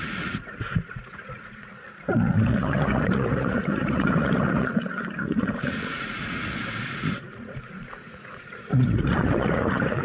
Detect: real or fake fake